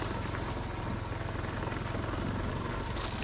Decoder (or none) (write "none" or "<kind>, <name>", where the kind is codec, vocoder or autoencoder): none